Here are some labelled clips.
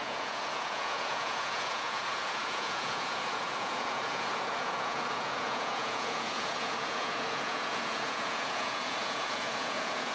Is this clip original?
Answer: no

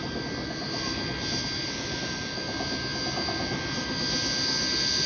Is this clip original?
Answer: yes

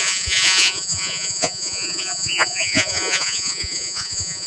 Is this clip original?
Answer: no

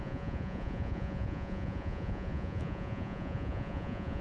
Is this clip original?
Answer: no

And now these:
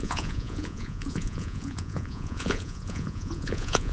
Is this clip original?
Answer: no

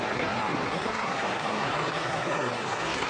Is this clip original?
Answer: no